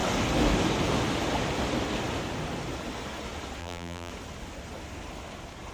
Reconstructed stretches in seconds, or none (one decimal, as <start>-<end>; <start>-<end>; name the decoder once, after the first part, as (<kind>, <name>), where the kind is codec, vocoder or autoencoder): 3.6-4.1 (vocoder, BigVGAN v2)